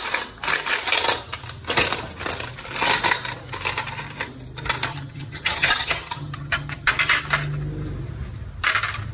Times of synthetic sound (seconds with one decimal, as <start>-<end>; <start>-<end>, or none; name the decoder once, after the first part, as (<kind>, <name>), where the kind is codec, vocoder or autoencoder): 4.9-6.9 (vocoder, HiFi-GAN)